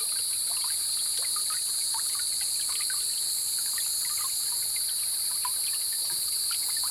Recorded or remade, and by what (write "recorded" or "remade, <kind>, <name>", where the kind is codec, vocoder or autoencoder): recorded